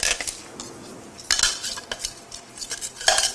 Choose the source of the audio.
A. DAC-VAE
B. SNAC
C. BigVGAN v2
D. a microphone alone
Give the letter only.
D